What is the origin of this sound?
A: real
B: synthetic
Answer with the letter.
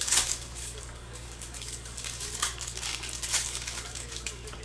B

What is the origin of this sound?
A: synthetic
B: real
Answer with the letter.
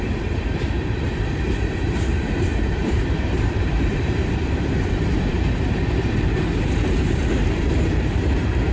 A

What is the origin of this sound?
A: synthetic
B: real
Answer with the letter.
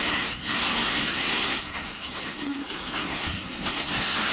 A